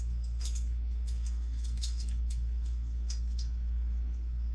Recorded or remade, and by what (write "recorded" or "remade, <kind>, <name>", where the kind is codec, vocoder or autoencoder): remade, codec, SNAC